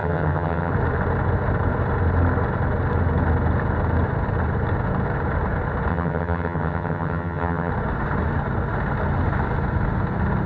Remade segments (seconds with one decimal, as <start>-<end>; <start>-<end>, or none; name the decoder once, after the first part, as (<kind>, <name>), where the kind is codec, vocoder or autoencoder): 0.0-0.7 (vocoder, HiFi-GAN); 5.9-7.7